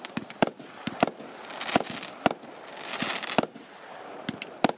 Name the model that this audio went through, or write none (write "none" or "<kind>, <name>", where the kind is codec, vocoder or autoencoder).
none